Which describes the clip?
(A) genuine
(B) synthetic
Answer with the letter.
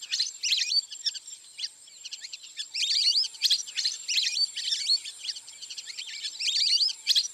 B